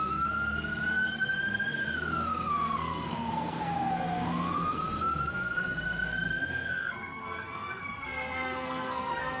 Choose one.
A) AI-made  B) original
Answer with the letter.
A